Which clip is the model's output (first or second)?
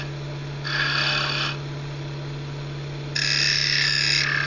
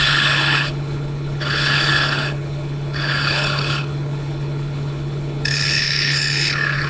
second